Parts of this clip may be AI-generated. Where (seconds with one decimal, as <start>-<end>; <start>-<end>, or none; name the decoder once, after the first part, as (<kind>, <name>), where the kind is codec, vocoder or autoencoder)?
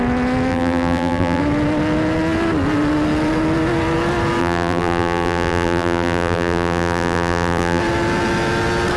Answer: 0.5-1.4 (vocoder, BigVGAN v2); 4.4-7.8